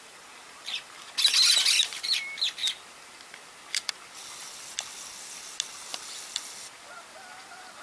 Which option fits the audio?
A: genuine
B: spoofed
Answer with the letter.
A